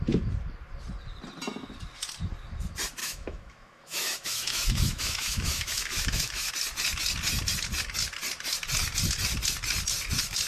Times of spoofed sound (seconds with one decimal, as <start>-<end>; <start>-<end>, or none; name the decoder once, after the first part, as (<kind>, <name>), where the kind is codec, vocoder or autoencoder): 3.0-6.5 (autoencoder, DAC-VAE)